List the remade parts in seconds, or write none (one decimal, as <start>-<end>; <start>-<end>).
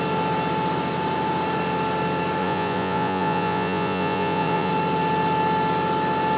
2.4-4.7